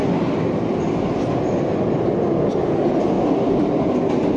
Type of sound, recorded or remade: recorded